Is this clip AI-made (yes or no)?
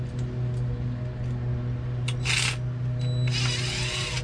no